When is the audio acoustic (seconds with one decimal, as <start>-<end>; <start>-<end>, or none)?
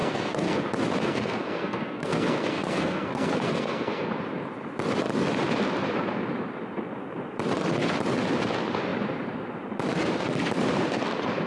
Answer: 0.6-1.0; 4.1-11.5